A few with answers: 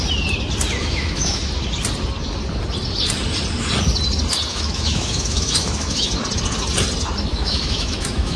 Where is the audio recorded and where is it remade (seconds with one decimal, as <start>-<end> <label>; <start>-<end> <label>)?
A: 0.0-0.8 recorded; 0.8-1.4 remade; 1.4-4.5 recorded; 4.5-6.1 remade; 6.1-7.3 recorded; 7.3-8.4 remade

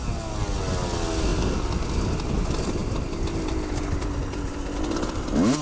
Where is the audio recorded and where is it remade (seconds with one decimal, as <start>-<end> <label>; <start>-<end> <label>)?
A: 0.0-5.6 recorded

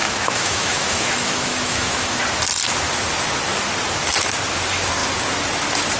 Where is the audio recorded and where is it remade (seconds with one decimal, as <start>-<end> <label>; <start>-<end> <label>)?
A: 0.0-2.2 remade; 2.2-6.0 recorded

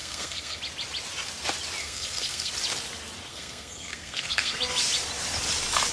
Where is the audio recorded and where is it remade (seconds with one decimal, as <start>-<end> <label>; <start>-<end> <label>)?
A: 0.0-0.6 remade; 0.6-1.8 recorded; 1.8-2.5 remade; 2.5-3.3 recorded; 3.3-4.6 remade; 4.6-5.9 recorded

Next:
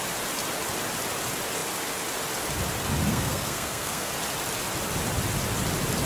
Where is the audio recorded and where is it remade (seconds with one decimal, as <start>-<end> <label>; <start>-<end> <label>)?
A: 0.0-3.1 recorded; 3.1-4.1 remade; 4.1-6.1 recorded